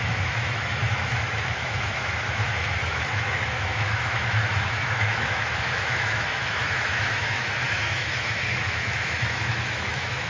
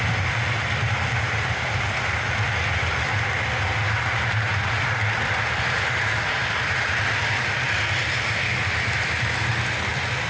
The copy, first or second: first